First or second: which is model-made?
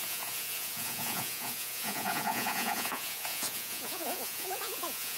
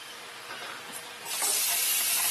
first